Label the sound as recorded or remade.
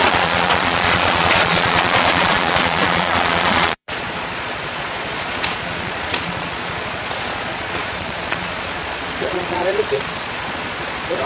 remade